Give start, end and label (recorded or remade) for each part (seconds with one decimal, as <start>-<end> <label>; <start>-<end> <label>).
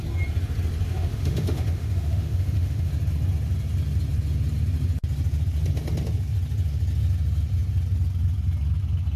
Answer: 0.0-0.9 recorded; 0.9-2.9 remade; 2.9-9.2 recorded